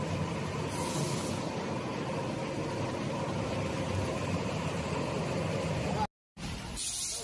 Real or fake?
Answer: real